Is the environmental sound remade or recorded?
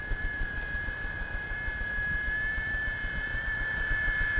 recorded